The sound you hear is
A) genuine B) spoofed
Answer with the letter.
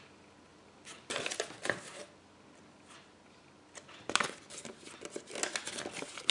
A